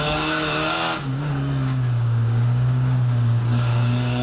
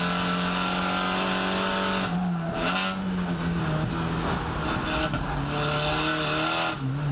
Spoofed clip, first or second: first